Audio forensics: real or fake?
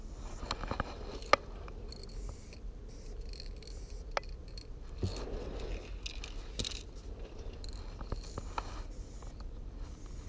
real